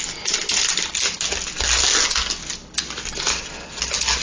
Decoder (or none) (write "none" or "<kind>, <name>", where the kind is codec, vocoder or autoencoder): none